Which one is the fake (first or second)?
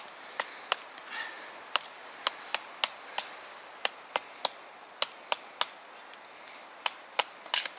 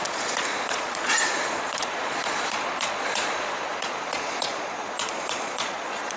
second